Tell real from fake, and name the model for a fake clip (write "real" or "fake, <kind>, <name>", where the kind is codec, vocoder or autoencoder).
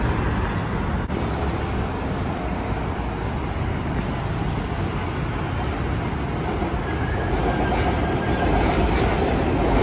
real